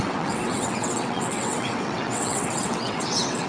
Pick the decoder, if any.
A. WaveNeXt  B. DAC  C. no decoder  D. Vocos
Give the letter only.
A